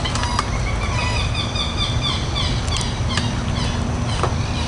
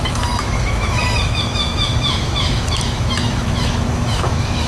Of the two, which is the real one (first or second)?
first